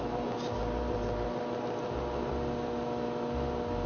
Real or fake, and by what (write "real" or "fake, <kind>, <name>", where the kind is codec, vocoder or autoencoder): real